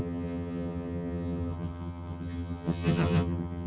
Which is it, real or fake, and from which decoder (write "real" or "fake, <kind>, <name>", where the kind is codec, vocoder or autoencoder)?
fake, vocoder, HiFi-GAN